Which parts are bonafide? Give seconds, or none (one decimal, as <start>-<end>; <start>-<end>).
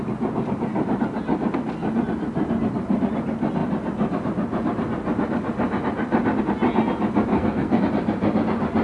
0.0-7.3; 7.8-8.8